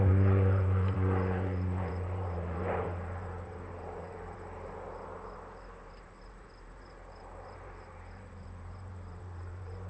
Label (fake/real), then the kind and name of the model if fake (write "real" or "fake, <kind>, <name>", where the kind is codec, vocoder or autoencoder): fake, vocoder, BigVGAN v2